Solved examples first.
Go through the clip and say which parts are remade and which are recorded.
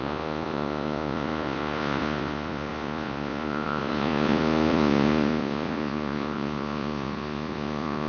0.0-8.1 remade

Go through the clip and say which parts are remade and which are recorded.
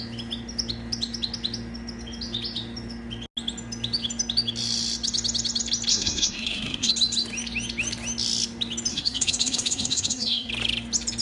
0.0-5.9 recorded; 5.9-6.9 remade; 6.9-8.9 recorded; 8.9-10.5 remade; 10.5-11.2 recorded